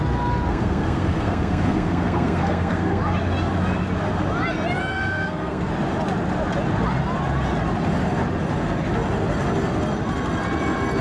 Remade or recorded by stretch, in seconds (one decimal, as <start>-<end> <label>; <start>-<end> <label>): 0.0-0.5 recorded; 0.5-3.0 remade; 3.0-4.8 recorded; 4.8-5.7 remade; 5.7-11.0 recorded